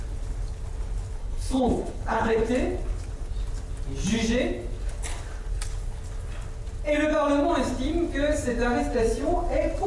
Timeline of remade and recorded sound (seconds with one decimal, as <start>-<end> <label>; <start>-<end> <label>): 0.0-1.2 recorded; 1.2-2.5 remade; 2.5-9.9 recorded